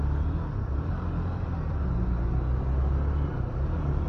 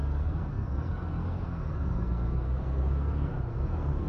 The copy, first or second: second